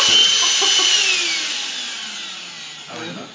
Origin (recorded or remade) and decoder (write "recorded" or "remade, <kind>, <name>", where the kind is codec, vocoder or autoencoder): recorded